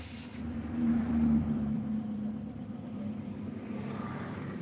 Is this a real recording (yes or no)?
no